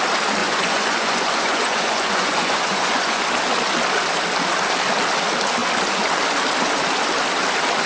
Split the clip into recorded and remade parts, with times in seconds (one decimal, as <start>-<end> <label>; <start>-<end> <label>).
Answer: 0.0-0.4 recorded; 0.4-3.2 remade; 3.2-7.9 recorded